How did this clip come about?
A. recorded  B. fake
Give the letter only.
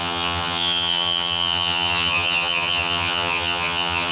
B